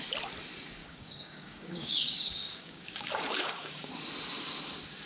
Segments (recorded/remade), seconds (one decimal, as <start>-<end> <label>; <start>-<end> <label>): 0.0-0.8 recorded; 0.8-3.9 remade; 3.9-5.1 recorded